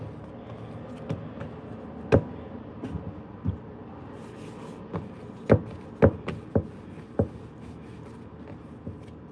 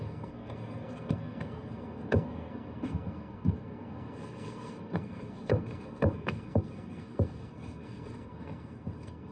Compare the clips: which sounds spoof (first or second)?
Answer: second